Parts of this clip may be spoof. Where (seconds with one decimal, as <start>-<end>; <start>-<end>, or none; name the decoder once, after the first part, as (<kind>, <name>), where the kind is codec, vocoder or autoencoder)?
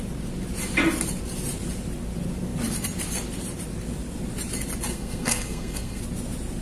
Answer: 4.9-6.0 (codec, SNAC)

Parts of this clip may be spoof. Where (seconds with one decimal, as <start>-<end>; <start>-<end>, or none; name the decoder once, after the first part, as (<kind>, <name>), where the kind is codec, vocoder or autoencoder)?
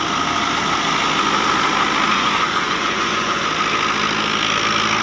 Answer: 2.1-3.4 (vocoder, Vocos)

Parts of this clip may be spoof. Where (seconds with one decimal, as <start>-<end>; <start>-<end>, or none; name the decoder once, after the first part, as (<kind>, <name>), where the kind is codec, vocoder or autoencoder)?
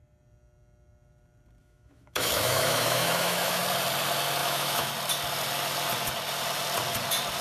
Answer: 1.6-3.6 (autoencoder, DAC-VAE); 4.4-4.9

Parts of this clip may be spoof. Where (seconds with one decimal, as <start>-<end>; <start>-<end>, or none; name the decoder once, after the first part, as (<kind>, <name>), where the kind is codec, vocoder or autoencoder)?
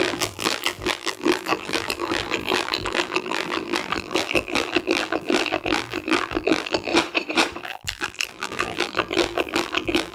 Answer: 0.0-6.9 (vocoder, BigVGAN v2); 7.6-10.1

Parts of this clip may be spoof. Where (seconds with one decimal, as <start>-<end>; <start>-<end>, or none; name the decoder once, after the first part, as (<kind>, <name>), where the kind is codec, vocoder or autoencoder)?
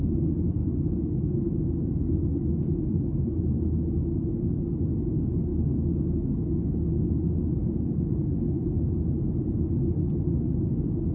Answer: 0.6-3.7 (autoencoder, DAC-VAE); 5.5-7.1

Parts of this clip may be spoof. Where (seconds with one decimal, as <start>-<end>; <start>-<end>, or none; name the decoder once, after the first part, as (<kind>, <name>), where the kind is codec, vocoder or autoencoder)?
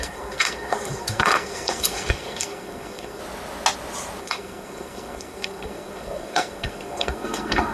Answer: 0.0-3.2 (codec, SNAC); 4.2-7.7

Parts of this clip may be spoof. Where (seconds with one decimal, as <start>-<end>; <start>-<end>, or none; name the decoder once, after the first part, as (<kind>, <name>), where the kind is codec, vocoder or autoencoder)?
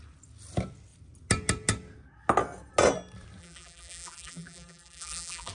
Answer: 3.4-5.5 (vocoder, BigVGAN v2)